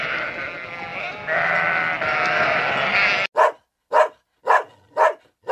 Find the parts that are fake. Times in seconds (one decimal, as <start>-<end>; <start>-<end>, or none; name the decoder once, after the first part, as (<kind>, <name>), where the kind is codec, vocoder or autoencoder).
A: none